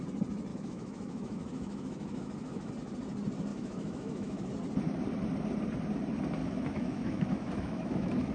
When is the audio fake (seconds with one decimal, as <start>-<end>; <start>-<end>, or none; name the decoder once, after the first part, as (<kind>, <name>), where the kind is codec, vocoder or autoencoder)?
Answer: 0.5-2.7 (autoencoder, DAC-VAE); 3.5-4.5; 6.4-8.3